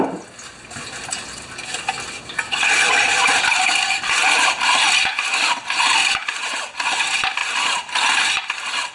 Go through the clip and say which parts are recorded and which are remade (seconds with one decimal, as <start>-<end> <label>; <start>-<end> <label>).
0.0-8.9 recorded